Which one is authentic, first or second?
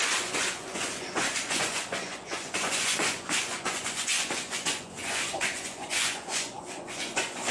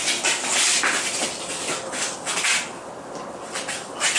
second